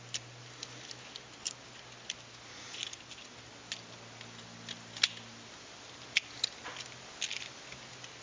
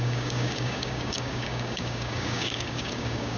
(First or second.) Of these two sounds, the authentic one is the first